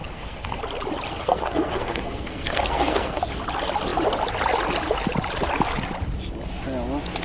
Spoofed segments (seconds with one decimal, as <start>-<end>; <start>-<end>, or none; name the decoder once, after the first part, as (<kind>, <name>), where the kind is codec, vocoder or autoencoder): 0.0-0.6 (codec, SNAC); 1.1-3.2

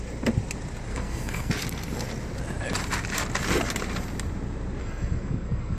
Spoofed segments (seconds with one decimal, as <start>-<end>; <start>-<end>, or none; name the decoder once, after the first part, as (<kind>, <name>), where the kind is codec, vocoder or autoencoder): 0.9-1.5 (codec, SNAC); 4.8-5.8

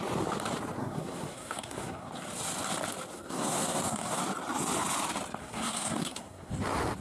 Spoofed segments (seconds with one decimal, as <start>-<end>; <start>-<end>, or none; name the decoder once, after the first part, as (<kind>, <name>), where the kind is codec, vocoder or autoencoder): 0.8-2.1 (codec, SNAC); 3.1-4.2; 5.4-6.5

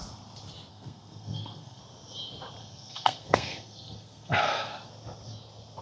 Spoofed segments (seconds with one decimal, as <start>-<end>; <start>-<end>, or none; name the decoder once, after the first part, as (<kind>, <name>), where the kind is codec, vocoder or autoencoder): 0.7-1.8 (codec, SNAC); 2.6-4.9